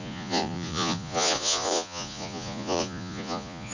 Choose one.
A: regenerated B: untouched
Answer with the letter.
A